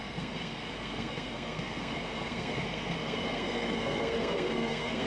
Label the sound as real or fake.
fake